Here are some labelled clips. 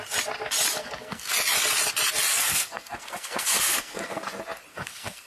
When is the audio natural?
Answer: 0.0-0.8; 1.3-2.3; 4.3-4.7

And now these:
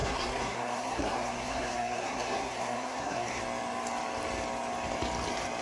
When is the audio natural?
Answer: 3.4-5.6

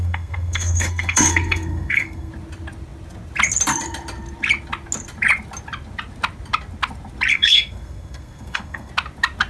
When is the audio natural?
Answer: 2.3-7.3; 8.9-9.5

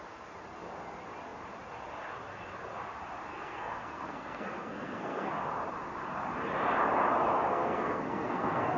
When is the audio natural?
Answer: 0.0-3.3; 5.3-7.5

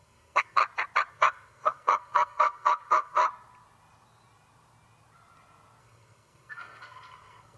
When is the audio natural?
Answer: 0.6-1.1; 3.2-5.8

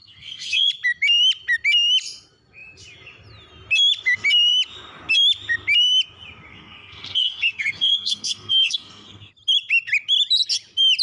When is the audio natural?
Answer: 0.7-6.5; 9.3-11.0